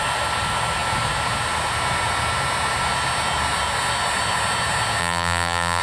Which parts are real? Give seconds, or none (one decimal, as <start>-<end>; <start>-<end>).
0.0-5.0